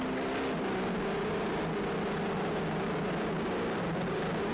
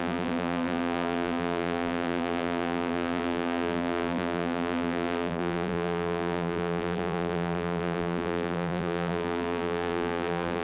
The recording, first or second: first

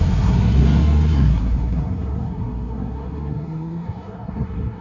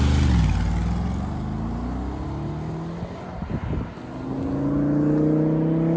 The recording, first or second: second